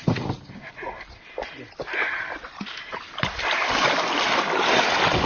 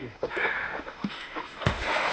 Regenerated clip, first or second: second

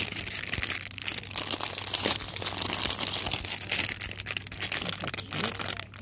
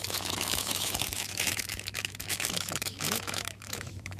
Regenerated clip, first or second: second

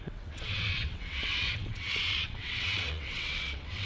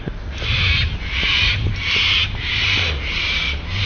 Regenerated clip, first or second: first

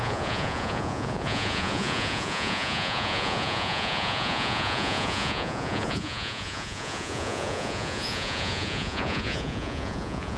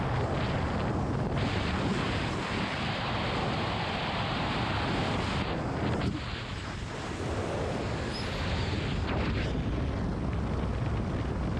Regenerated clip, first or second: first